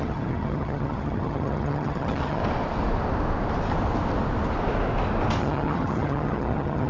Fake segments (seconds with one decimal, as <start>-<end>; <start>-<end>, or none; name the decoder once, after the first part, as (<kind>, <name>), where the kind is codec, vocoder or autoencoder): 0.0-2.4 (vocoder, HiFi-GAN); 5.4-6.9